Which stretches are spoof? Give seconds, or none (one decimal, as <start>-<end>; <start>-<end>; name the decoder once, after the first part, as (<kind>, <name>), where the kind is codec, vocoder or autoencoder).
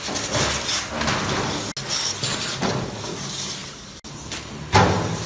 none